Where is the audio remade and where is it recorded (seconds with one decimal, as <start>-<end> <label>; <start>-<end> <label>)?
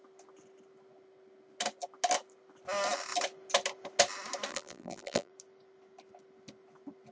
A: 0.0-4.5 recorded; 4.5-5.3 remade; 5.3-7.1 recorded